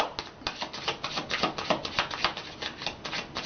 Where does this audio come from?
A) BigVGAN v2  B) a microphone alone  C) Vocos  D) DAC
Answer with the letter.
B